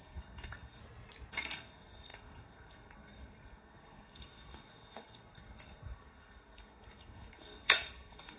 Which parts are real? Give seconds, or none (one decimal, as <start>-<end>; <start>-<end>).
0.8-1.3